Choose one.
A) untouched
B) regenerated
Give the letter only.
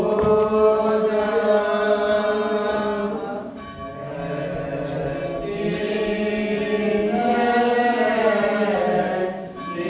A